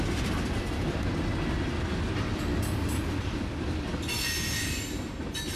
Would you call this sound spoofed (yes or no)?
no